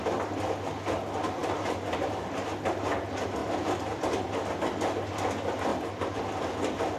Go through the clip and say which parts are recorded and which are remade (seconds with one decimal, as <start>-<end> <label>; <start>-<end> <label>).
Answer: 0.0-1.4 recorded; 1.4-2.3 remade; 2.3-3.4 recorded; 3.4-4.1 remade; 4.1-5.7 recorded; 5.7-6.2 remade; 6.2-7.0 recorded